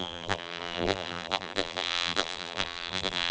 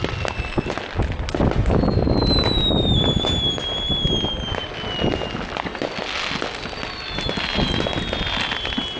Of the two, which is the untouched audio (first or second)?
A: second